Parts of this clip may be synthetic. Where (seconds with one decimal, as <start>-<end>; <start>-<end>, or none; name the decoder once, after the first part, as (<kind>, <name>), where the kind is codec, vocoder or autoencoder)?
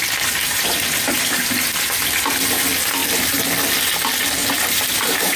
0.4-1.8 (vocoder, BigVGAN v2); 4.4-5.4